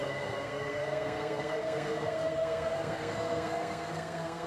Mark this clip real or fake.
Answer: fake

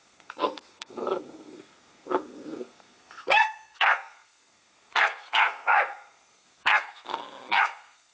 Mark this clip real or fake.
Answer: fake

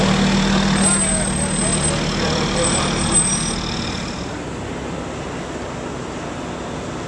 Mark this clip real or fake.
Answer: real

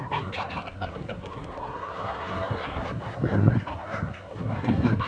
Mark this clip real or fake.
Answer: fake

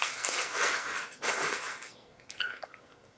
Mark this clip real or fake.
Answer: fake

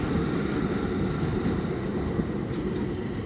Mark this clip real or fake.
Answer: real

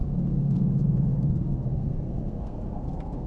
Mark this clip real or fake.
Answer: fake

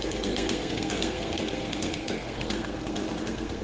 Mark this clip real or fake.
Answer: fake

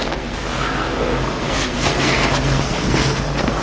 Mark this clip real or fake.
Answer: fake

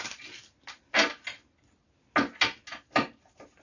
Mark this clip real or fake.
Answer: real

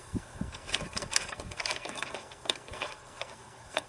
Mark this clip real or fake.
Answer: fake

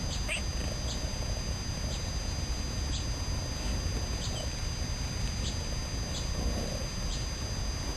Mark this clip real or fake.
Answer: real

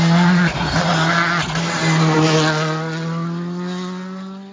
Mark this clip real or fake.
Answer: real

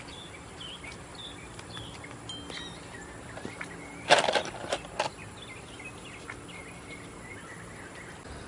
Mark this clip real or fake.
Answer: real